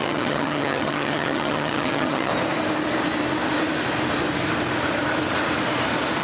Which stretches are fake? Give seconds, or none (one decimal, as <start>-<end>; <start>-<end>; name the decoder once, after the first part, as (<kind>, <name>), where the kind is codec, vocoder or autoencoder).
0.0-2.3 (vocoder, HiFi-GAN)